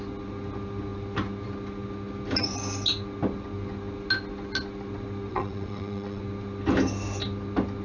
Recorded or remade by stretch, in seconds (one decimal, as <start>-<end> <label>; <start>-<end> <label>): 0.0-5.3 recorded; 5.3-6.2 remade; 6.2-7.8 recorded